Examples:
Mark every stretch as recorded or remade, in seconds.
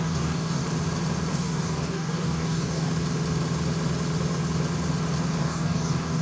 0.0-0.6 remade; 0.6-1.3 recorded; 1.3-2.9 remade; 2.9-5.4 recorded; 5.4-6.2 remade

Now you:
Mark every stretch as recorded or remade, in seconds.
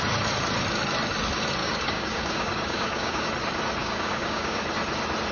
0.0-1.6 recorded; 1.6-3.3 remade; 3.3-3.8 recorded; 3.8-4.6 remade; 4.6-5.3 recorded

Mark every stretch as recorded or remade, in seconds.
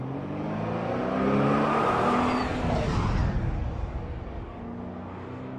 0.0-3.2 recorded; 3.2-4.6 remade; 4.6-5.6 recorded